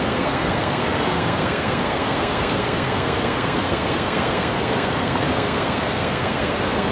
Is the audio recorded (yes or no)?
no